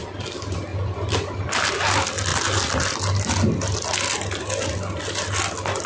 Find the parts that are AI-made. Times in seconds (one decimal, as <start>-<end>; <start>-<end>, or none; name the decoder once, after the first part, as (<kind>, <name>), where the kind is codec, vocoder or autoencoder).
0.7-1.5 (vocoder, BigVGAN v2)